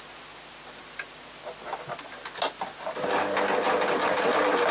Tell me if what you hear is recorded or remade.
recorded